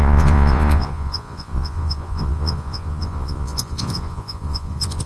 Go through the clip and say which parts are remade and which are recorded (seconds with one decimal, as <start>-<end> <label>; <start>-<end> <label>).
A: 0.0-5.1 remade